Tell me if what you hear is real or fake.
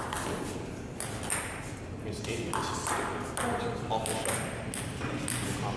real